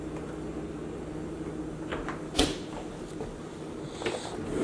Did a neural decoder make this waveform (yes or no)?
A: no